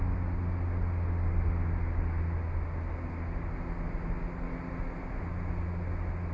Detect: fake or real real